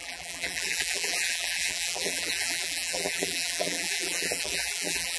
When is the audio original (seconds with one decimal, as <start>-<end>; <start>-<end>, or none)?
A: none